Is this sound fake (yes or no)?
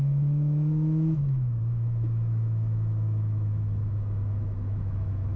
yes